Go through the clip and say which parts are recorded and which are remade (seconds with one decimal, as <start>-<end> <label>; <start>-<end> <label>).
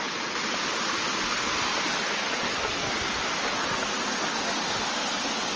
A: 0.0-5.6 recorded